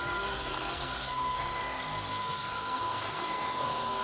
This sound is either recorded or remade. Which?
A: remade